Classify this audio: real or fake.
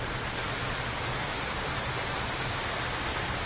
real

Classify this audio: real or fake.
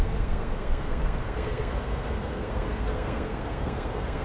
fake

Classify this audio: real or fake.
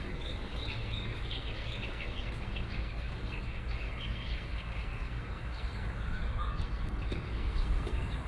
fake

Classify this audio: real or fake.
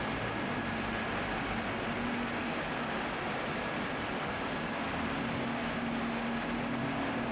real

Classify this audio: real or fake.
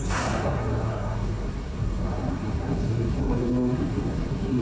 fake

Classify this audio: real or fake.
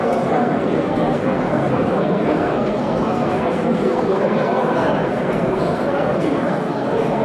fake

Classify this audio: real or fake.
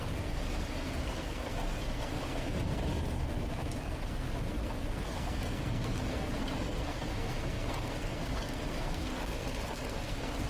fake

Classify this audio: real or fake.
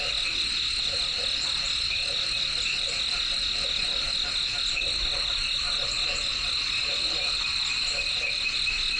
real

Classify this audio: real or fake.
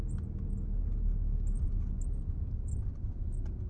real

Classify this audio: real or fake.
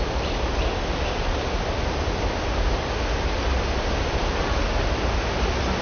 real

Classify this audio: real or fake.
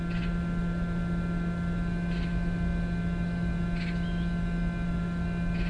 real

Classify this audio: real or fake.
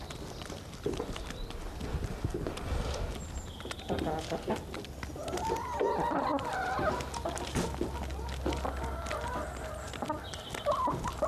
real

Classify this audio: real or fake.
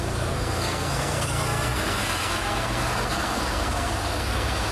fake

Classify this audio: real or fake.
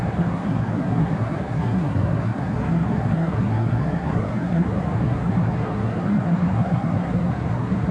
fake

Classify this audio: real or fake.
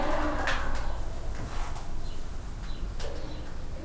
real